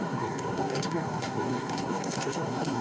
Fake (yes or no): yes